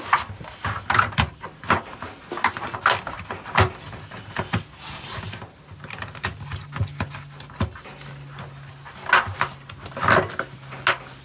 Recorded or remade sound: recorded